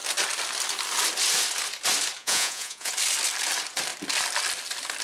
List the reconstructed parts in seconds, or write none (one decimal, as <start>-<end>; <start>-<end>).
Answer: 2.2-2.9